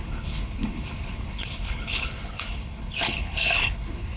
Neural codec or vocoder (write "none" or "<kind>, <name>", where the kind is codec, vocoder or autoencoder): codec, HILCodec